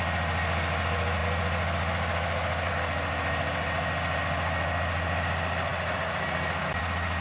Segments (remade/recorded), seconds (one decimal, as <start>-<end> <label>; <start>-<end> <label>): 0.0-7.2 recorded